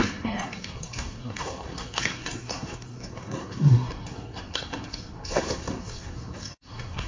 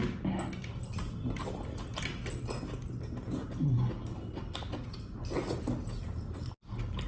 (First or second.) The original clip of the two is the second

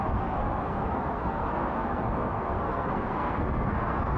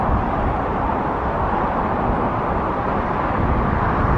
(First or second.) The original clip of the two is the second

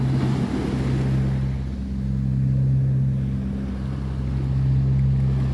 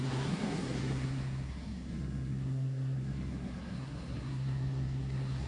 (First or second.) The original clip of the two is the first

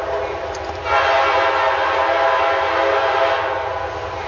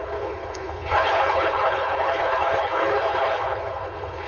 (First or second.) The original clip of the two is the first